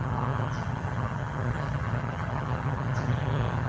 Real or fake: fake